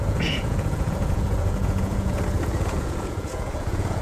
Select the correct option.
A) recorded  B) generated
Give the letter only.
B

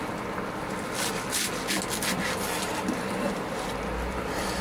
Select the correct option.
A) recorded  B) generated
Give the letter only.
A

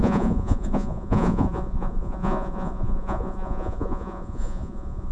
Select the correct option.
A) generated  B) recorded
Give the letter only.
A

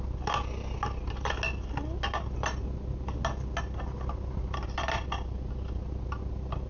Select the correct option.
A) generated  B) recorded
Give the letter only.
B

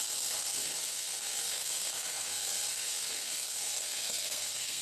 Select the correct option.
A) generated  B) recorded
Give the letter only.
A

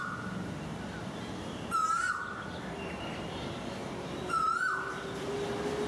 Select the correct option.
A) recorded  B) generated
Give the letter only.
A